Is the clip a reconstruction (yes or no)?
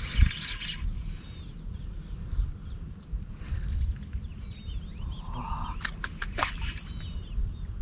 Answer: no